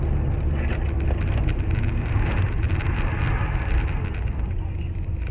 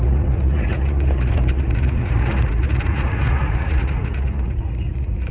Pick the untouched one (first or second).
first